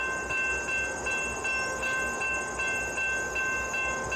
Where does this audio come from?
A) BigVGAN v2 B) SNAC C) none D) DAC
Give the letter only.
C